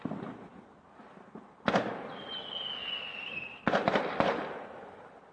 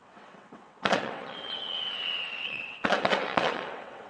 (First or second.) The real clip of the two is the first